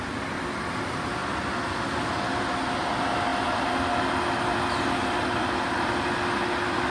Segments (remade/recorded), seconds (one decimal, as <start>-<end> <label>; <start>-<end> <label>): 0.0-6.9 recorded